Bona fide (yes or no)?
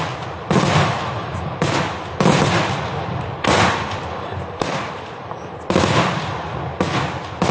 no